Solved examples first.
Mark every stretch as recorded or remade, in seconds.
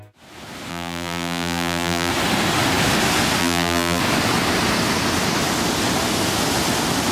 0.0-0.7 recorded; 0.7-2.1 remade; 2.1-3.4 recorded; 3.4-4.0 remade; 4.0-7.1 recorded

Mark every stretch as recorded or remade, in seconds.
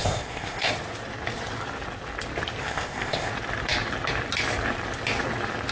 0.0-0.7 remade; 0.7-2.6 recorded; 2.6-3.3 remade; 3.3-5.7 recorded